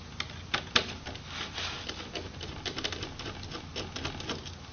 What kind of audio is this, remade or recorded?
recorded